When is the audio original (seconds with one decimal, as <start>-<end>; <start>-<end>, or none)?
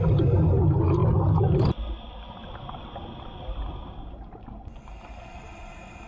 0.0-6.1